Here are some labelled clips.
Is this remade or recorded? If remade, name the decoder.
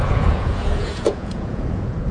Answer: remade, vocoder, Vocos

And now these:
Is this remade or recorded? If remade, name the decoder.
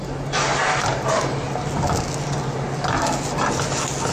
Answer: recorded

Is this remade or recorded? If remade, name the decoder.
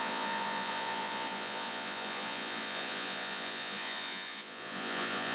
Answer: remade, vocoder, Vocos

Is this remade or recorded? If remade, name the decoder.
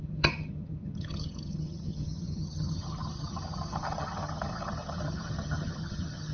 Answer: remade, vocoder, HiFi-GAN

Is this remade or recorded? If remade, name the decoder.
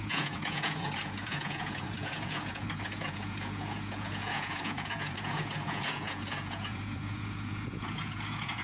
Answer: remade, vocoder, Vocos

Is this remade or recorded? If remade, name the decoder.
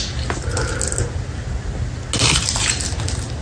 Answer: recorded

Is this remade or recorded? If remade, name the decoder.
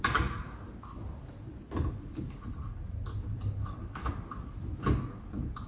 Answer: recorded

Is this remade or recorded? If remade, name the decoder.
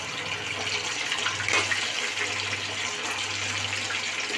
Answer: recorded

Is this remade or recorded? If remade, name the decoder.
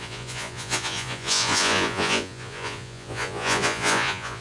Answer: remade, vocoder, Vocos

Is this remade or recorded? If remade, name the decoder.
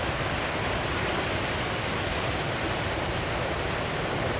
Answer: recorded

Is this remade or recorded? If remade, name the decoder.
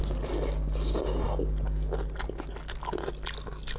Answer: recorded